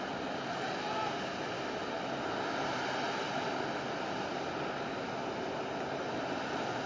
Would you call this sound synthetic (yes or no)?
no